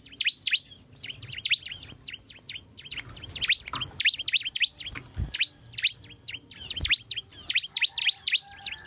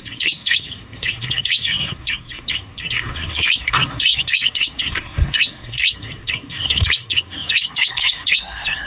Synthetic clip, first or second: second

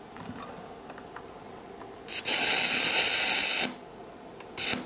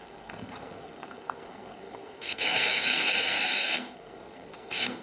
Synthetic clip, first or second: second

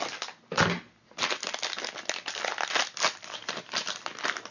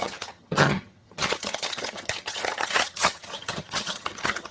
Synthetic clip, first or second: second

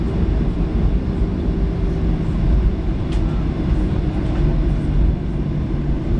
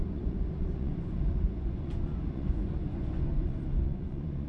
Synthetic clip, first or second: second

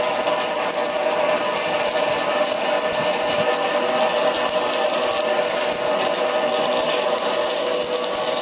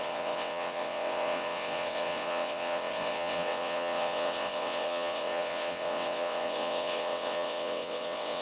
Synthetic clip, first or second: second